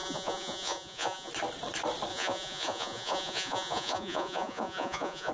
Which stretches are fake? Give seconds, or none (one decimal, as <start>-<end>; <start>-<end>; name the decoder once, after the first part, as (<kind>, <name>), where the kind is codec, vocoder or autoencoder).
0.0-1.3 (vocoder, Vocos); 2.1-5.3